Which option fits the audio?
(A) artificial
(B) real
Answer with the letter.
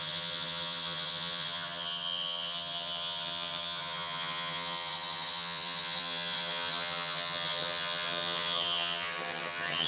A